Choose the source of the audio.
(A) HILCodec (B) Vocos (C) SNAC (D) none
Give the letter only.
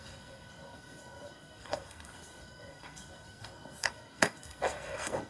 C